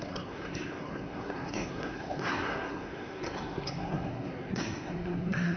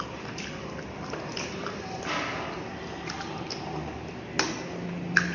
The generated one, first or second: first